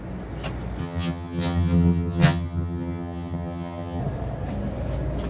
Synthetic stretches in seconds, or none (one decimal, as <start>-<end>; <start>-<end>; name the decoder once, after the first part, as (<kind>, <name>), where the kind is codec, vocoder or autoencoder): 0.8-4.0 (vocoder, HiFi-GAN)